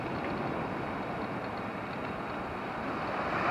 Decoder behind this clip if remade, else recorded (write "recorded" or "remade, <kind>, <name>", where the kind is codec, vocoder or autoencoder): recorded